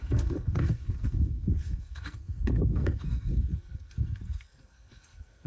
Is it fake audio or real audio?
fake